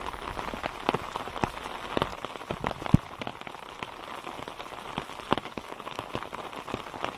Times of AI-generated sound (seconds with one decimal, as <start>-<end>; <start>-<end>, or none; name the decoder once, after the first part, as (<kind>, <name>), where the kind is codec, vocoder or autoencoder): 5.4-6.1 (codec, DAC)